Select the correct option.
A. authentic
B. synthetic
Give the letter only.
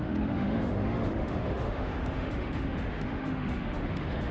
B